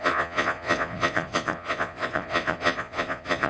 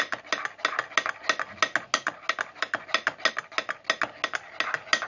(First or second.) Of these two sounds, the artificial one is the first